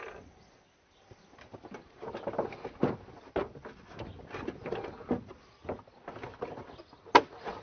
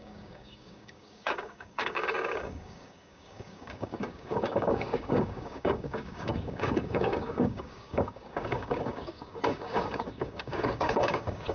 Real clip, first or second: first